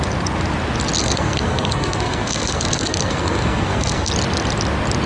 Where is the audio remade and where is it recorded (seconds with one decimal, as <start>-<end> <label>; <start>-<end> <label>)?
0.0-1.0 recorded; 1.0-4.1 remade; 4.1-5.1 recorded